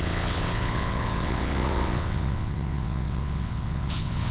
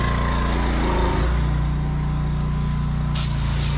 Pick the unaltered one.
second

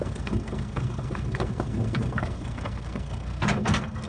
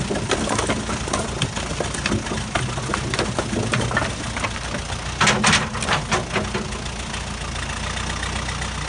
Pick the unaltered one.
second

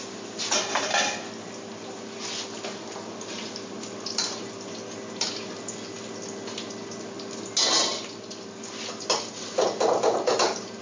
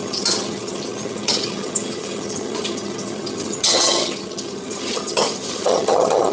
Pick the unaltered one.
first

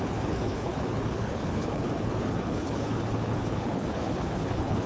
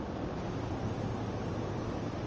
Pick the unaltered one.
second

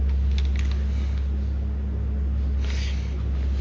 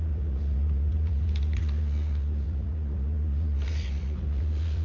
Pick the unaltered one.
first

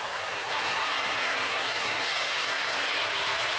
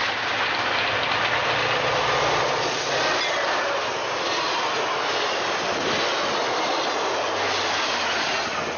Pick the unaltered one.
second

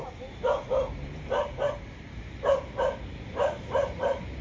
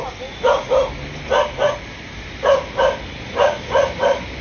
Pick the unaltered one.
second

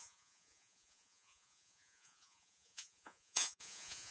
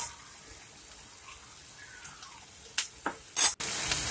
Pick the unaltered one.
second